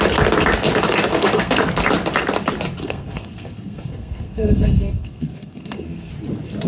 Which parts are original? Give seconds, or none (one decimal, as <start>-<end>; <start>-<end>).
0.0-1.1; 1.6-2.8; 6.1-6.7